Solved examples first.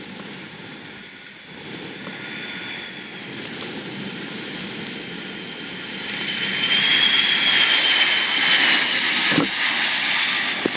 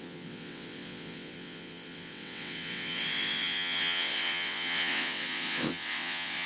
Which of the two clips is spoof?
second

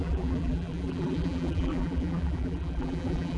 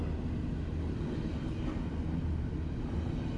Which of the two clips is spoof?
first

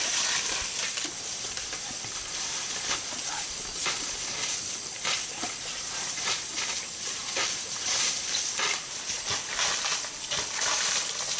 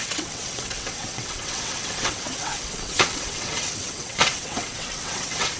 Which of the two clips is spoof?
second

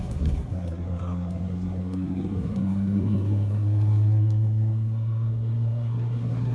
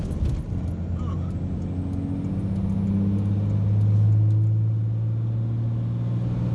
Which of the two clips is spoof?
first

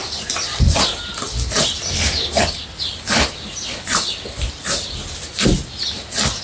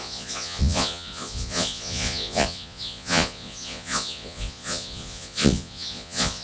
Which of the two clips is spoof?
second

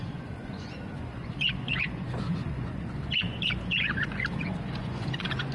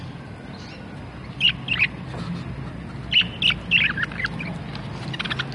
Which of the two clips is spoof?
first